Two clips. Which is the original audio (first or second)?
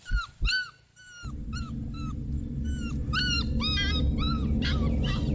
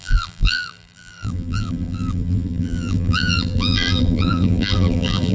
first